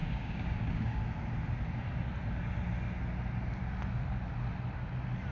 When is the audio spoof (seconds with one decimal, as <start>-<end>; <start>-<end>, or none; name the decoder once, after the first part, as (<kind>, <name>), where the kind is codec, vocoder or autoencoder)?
0.0-1.0 (codec, DAC)